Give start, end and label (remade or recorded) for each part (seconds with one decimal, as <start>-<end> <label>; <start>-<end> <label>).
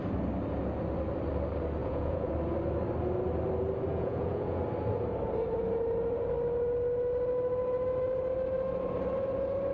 0.0-1.8 recorded; 1.8-2.3 remade; 2.3-3.9 recorded; 3.9-4.6 remade; 4.6-9.7 recorded